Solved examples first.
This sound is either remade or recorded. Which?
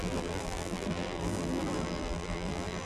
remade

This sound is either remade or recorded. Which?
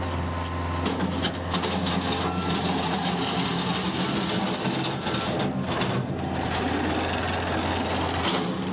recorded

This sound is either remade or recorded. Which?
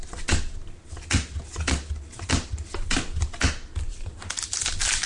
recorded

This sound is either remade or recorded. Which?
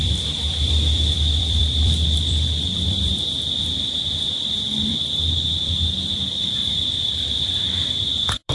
remade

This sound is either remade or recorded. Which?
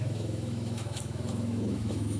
remade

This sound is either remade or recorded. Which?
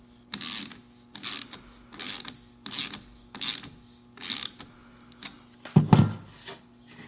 recorded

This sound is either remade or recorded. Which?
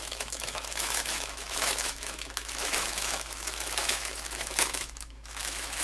remade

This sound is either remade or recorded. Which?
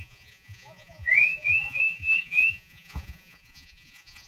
remade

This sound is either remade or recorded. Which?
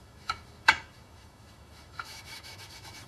remade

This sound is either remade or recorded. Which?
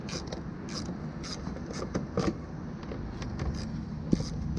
recorded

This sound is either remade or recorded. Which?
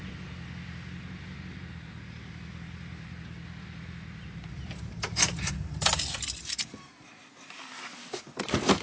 recorded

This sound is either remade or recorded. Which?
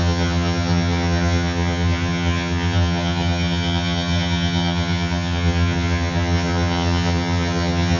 remade